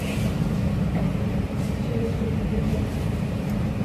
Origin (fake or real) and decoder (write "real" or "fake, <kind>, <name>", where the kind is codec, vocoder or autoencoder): fake, vocoder, BigVGAN v2